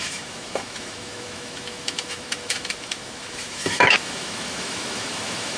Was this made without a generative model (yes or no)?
no